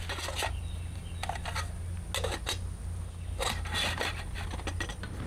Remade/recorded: recorded